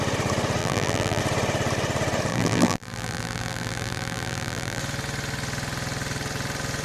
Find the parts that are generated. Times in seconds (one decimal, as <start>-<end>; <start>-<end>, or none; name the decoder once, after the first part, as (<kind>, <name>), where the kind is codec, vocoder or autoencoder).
0.6-1.2 (vocoder, BigVGAN v2); 2.3-4.8

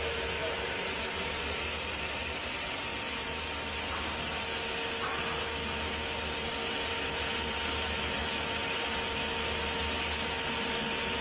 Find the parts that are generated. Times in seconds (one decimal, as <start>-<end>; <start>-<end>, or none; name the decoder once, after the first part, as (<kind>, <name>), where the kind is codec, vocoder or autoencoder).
0.4-1.7 (vocoder, BigVGAN v2)

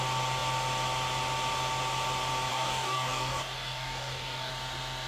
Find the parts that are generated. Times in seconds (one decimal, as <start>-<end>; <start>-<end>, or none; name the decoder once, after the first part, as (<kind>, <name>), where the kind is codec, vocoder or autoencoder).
2.5-4.5 (codec, DAC)